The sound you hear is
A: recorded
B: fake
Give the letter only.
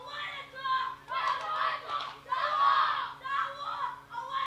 A